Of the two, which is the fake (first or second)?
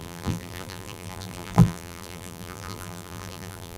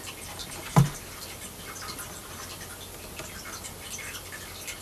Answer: first